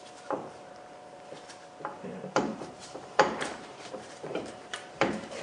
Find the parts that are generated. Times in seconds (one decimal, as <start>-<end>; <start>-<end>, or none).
1.9-5.4